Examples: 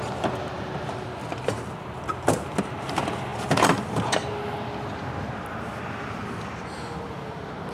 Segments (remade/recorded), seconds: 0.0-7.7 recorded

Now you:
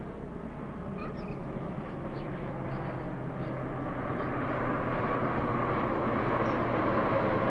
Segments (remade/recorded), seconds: 0.0-1.4 recorded; 1.4-2.5 remade; 2.5-7.5 recorded

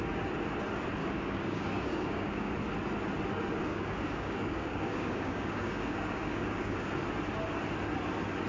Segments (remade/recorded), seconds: 0.0-1.0 recorded; 1.0-2.5 remade; 2.5-3.7 recorded; 3.7-6.9 remade; 6.9-8.5 recorded

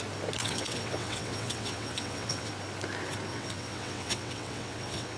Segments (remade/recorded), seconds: 0.0-0.4 recorded; 0.4-2.5 remade; 2.5-3.3 recorded; 3.3-5.2 remade